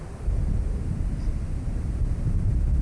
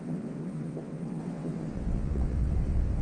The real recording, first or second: first